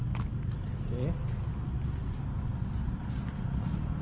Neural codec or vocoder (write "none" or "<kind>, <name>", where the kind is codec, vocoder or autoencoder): none